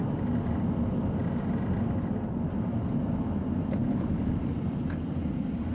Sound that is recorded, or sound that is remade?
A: recorded